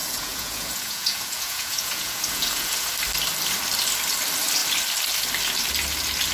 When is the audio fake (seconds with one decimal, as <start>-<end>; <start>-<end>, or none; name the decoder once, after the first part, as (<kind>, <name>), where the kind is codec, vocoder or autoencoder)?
0.0-2.9 (vocoder, Vocos)